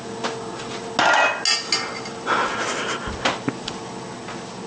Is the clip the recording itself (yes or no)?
yes